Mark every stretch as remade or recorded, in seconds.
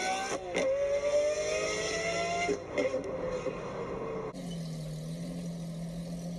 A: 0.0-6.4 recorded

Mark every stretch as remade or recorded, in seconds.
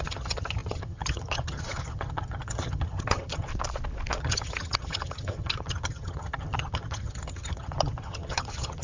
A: 0.0-3.5 remade; 3.5-4.2 recorded; 4.2-8.8 remade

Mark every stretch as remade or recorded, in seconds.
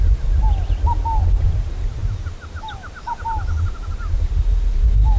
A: 0.0-5.2 recorded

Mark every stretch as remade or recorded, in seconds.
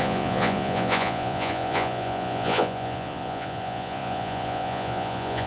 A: 0.0-5.5 remade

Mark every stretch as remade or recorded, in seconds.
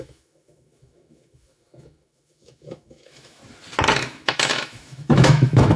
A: 0.0-3.4 remade; 3.4-4.0 recorded; 4.0-5.8 remade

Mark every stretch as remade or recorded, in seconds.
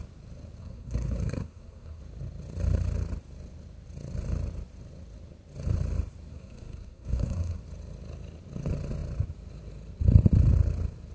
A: 0.0-0.6 recorded; 0.6-2.0 remade; 2.0-6.3 recorded; 6.3-7.6 remade; 7.6-11.1 recorded